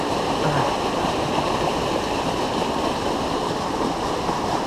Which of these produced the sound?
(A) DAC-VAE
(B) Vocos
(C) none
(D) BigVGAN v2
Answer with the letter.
C